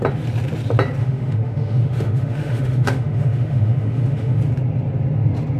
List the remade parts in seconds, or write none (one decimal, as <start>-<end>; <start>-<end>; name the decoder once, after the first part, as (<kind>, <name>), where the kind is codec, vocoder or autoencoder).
1.0-4.4 (autoencoder, DAC-VAE)